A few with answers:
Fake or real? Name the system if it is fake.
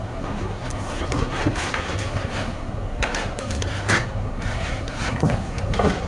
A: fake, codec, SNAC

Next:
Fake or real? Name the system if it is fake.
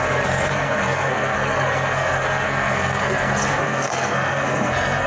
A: fake, codec, SNAC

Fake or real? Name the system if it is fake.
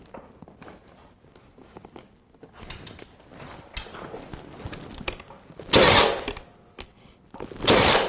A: real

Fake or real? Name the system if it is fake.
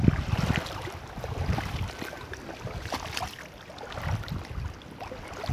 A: real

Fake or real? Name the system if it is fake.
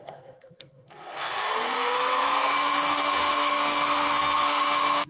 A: fake, codec, SNAC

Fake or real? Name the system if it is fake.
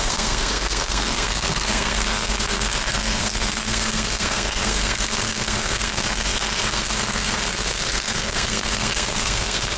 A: fake, codec, SNAC